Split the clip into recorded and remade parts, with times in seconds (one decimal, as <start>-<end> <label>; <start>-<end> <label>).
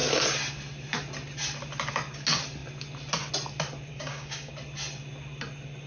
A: 0.0-3.9 recorded; 3.9-4.5 remade; 4.5-5.9 recorded